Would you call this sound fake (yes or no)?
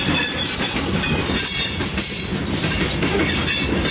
no